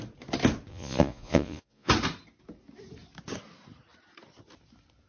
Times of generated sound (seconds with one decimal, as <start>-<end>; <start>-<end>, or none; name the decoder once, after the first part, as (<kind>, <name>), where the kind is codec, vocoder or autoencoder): 0.7-1.9 (vocoder, Vocos)